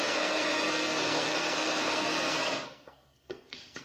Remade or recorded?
remade